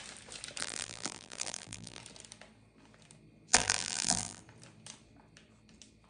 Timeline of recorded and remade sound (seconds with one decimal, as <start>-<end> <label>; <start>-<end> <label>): 0.0-0.6 recorded; 0.6-2.0 remade; 2.0-3.5 recorded; 3.5-4.4 remade; 4.4-6.1 recorded